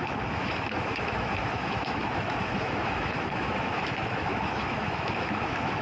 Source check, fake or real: fake